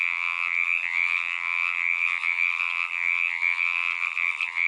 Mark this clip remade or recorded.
remade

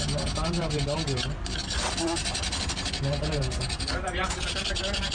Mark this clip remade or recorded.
recorded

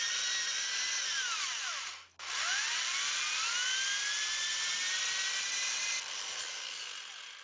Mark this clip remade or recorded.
recorded